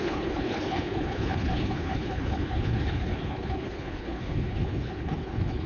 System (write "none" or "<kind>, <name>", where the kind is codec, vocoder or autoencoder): codec, HILCodec